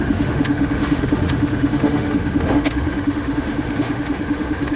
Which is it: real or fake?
fake